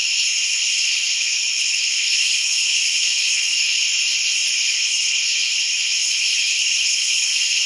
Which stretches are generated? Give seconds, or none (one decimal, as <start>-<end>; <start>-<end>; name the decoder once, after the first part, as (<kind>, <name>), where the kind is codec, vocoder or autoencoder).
0.0-3.9 (codec, HILCodec); 4.6-7.7